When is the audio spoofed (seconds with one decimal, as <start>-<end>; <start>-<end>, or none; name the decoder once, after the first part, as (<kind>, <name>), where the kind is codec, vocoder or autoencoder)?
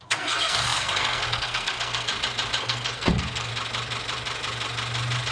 0.0-2.1 (codec, SNAC); 2.6-3.5